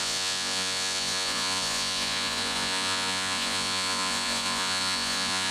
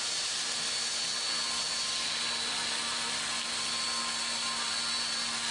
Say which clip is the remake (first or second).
first